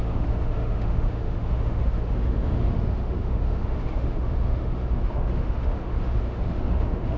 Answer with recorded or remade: remade